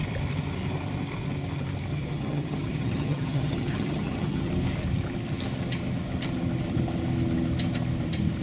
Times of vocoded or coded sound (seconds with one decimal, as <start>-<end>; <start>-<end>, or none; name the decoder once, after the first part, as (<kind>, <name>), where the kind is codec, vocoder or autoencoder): 1.9-4.5 (vocoder, HiFi-GAN)